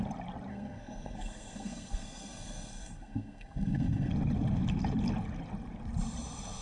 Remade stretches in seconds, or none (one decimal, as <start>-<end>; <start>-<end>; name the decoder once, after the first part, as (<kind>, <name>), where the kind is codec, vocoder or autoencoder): 0.5-4.1 (codec, SNAC)

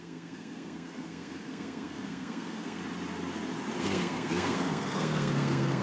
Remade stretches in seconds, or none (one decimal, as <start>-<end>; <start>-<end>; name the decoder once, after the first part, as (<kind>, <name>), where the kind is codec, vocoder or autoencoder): 0.0-2.8 (codec, SNAC); 3.8-5.8

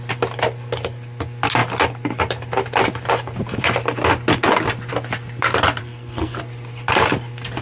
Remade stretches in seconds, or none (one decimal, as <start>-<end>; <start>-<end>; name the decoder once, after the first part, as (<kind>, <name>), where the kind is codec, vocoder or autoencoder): 5.8-6.4 (codec, SNAC)

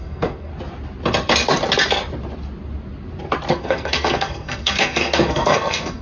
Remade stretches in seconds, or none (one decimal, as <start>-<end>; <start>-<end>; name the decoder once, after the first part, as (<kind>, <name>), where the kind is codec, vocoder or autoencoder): 0.0-0.5 (codec, SNAC); 3.5-6.0

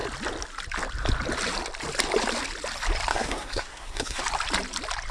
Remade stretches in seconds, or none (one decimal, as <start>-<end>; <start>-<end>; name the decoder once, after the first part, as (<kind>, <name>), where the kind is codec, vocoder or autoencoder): 3.1-4.2 (codec, SNAC)

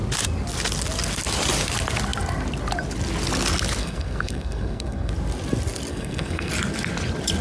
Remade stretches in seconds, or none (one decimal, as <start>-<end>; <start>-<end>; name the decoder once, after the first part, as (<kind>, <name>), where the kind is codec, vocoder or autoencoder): 3.8-5.1 (codec, SNAC); 5.9-6.5